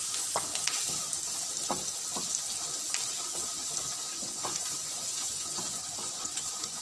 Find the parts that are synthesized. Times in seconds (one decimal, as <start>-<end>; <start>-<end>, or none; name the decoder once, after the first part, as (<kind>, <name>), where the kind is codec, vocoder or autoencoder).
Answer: 0.0-0.5 (vocoder, Vocos); 4.1-6.8